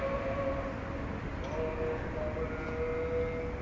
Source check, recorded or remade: recorded